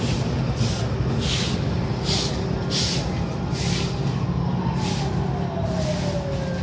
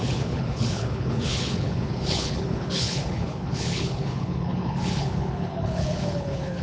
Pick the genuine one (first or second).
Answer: first